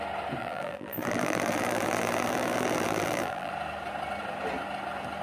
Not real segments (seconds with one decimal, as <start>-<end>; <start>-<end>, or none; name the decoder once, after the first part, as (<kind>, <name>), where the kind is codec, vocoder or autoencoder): 0.4-3.5 (vocoder, BigVGAN v2)